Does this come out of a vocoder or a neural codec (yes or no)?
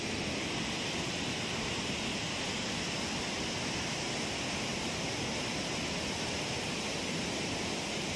no